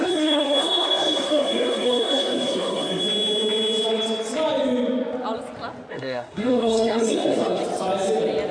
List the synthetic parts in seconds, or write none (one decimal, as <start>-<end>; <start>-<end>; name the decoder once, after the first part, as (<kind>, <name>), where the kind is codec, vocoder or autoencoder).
0.0-3.0 (codec, SNAC); 5.9-7.6